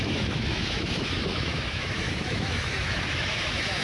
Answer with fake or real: fake